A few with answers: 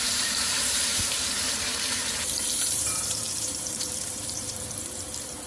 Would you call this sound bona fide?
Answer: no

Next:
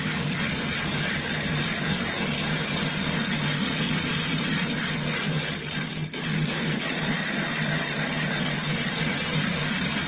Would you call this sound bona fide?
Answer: yes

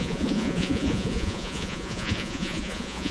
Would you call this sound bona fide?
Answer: no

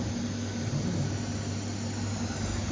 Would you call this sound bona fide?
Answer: yes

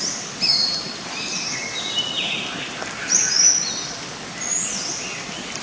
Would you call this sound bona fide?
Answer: yes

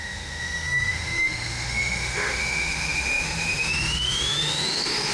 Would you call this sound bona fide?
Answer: no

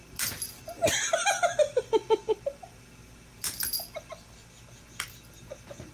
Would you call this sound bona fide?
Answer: yes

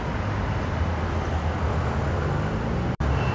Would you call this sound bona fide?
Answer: yes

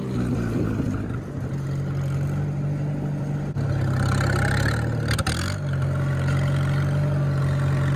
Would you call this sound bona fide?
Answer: yes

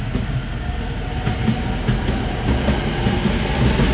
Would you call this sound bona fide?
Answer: yes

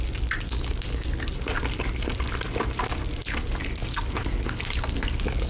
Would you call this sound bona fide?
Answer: yes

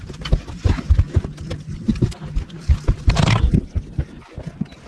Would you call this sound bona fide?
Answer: yes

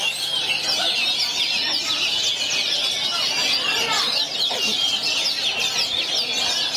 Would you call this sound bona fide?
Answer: yes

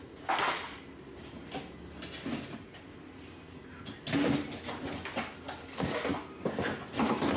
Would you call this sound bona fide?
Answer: yes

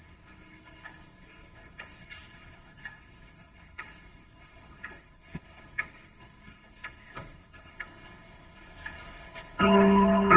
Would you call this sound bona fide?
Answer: no